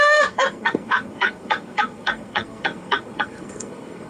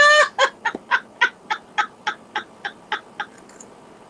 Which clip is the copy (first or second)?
first